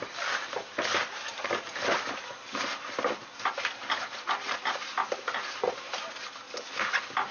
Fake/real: real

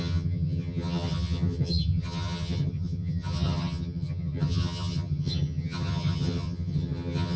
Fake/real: fake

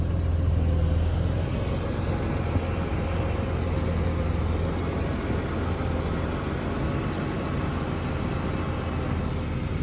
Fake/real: real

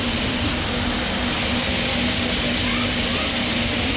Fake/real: real